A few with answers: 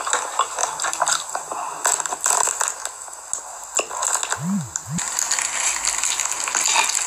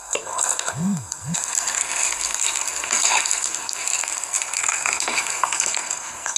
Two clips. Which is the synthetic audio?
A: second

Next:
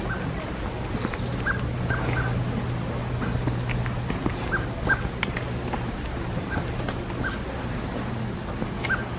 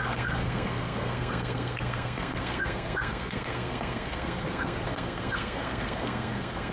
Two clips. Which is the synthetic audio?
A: second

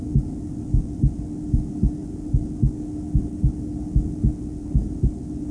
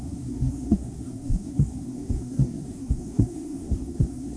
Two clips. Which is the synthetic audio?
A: second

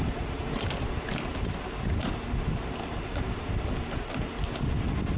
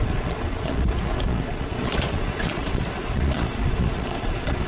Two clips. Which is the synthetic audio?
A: second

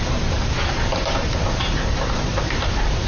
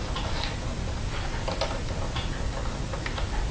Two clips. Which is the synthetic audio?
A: first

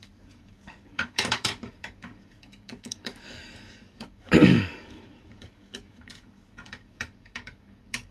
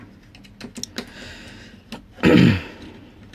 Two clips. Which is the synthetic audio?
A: first